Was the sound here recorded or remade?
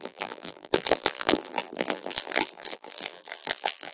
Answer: remade